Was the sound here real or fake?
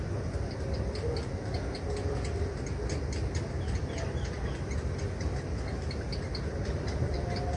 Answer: real